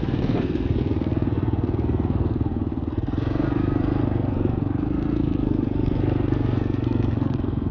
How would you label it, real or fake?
fake